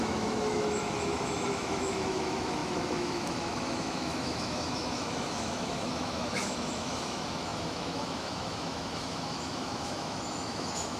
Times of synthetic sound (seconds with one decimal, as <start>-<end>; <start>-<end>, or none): 0.0-11.0